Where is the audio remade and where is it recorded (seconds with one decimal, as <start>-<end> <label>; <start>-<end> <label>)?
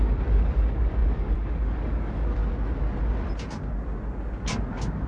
0.0-2.4 remade; 2.4-5.1 recorded